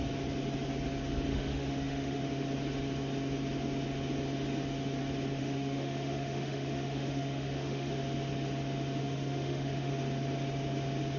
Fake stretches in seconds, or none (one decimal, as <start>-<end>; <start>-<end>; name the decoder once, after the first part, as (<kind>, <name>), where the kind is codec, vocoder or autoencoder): 1.3-2.2 (autoencoder, DAC-VAE); 5.4-7.9; 9.0-9.9